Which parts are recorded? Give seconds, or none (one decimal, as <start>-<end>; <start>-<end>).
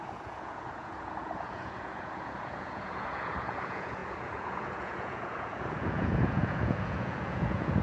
none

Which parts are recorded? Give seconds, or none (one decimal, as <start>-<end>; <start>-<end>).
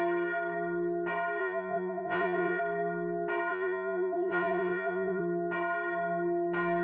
0.0-1.4; 2.6-3.5; 5.2-6.8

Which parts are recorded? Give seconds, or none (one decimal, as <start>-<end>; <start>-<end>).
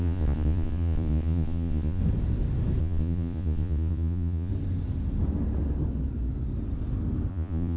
2.0-2.8; 4.5-7.3